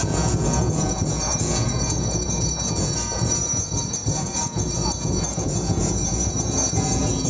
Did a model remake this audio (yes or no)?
yes